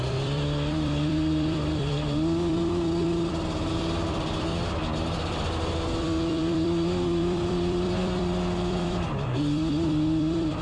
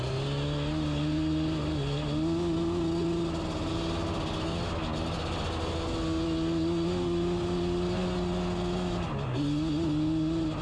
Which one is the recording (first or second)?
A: second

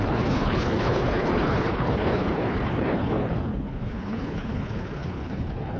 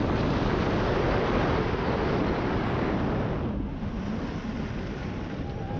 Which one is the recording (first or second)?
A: second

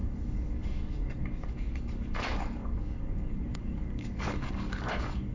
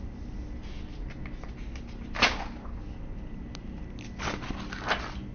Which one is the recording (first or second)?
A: second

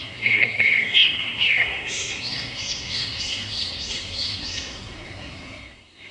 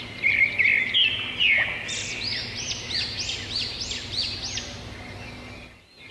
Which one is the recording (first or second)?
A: second